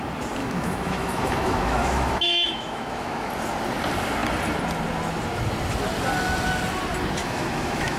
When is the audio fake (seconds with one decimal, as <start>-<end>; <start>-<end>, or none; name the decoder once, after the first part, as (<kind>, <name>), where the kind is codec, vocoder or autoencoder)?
0.4-3.3 (autoencoder, DAC-VAE); 7.2-8.0